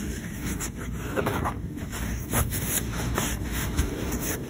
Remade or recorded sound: remade